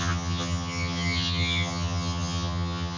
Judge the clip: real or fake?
fake